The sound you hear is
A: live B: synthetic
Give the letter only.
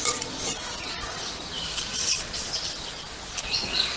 B